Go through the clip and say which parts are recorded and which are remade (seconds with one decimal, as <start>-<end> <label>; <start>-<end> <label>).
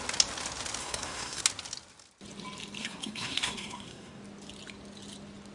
0.0-0.8 recorded; 0.8-1.4 remade; 1.4-2.8 recorded; 2.8-4.2 remade; 4.2-5.5 recorded